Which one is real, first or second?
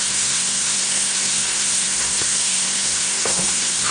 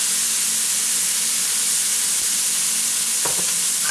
second